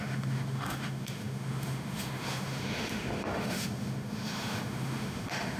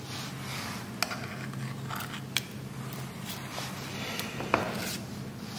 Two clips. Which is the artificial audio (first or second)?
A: first